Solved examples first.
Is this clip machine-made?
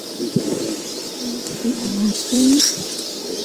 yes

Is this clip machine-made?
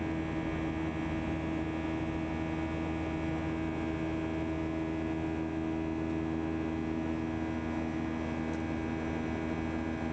no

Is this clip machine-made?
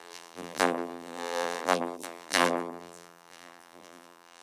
yes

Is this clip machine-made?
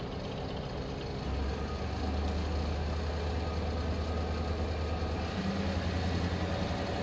no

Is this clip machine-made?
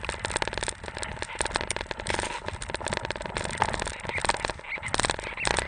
no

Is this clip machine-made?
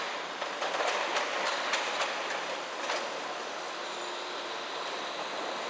yes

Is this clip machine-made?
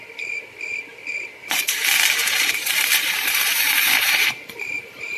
yes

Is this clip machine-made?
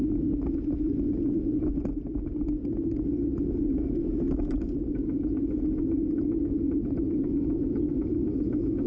no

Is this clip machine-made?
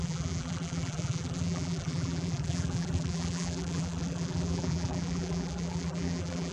yes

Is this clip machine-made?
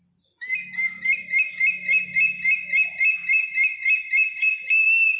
no